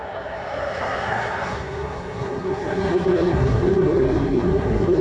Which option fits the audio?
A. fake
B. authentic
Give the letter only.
A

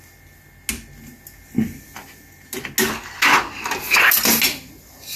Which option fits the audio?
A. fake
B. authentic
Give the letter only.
B